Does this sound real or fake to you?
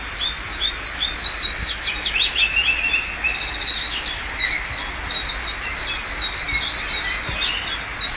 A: real